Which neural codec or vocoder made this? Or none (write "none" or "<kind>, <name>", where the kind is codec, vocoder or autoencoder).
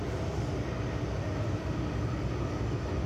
none